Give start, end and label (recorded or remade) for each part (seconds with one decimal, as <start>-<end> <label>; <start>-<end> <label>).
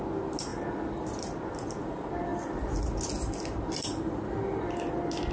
0.0-5.3 recorded